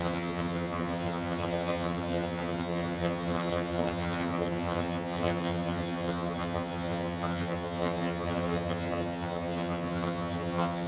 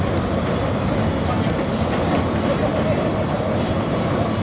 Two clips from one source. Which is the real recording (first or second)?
second